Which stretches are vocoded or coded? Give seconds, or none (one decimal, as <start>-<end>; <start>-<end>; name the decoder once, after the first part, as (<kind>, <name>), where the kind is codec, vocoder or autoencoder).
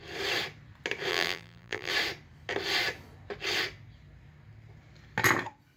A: 1.1-1.9 (vocoder, BigVGAN v2)